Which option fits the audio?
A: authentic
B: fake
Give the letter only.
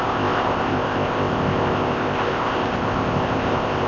B